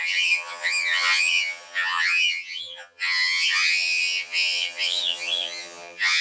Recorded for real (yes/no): no